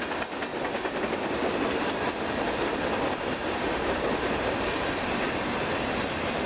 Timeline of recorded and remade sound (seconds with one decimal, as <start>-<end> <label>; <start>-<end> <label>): 0.0-6.5 recorded